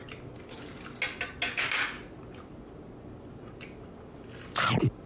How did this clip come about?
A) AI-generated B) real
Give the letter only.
B